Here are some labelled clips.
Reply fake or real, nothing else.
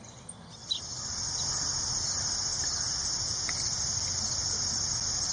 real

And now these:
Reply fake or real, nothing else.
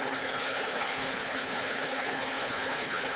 fake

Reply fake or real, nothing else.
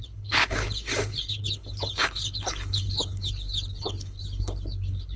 fake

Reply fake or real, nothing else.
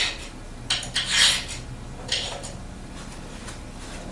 real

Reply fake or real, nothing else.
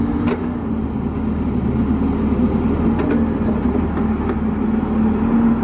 real